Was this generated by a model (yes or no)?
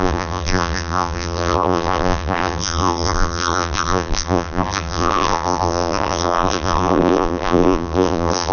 yes